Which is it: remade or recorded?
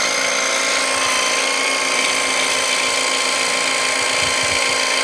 recorded